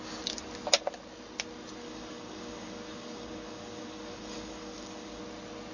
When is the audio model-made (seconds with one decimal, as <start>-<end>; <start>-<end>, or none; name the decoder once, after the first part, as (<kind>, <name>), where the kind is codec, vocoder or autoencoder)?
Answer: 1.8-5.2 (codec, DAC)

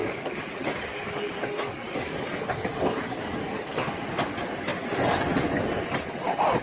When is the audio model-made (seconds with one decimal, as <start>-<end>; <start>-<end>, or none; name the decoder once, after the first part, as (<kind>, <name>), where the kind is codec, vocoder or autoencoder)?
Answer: 0.0-4.0 (codec, DAC)

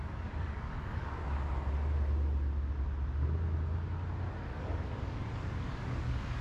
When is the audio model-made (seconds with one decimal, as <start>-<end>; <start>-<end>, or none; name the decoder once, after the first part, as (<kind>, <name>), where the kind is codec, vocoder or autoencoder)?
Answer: 0.0-1.2 (codec, DAC); 4.3-6.4